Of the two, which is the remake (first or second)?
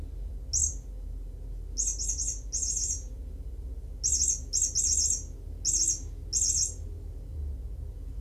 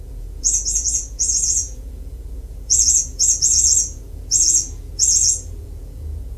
second